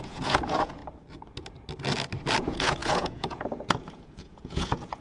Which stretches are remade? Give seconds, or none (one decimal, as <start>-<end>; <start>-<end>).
0.0-0.8; 2.4-5.0